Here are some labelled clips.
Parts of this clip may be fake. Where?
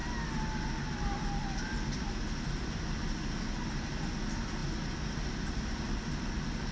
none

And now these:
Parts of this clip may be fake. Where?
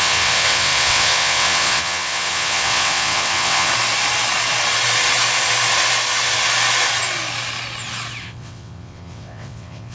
0.0-3.7 (vocoder, WaveNeXt); 8.2-9.9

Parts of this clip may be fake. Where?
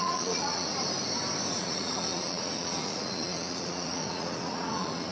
0.0-0.7 (vocoder, Vocos); 1.5-5.1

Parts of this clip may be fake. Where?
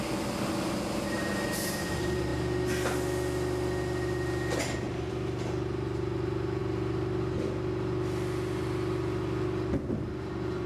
none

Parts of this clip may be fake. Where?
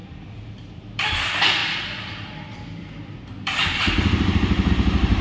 0.7-5.2 (vocoder, BigVGAN v2)